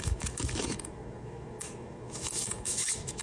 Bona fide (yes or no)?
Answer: no